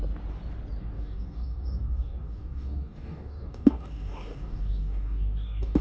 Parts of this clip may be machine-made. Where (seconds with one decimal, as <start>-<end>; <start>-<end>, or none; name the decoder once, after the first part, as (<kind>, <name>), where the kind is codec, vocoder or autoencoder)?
0.8-5.8 (codec, DAC)